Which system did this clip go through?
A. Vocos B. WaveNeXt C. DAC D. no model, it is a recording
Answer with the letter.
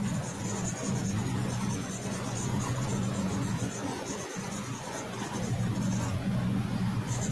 A